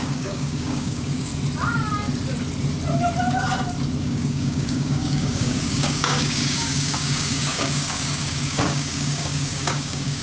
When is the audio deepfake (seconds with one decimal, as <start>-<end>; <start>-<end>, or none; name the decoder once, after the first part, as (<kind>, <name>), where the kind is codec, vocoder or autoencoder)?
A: 0.0-1.3 (codec, DAC); 4.0-10.2